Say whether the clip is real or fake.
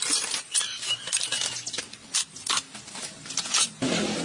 real